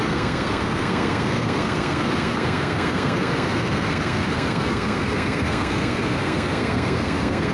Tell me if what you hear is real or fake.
fake